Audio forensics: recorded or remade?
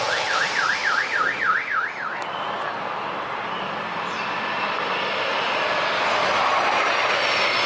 recorded